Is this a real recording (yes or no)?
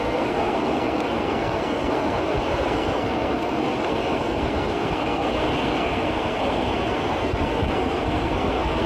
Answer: no